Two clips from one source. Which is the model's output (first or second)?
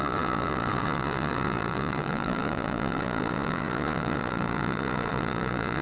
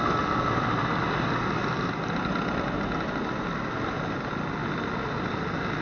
first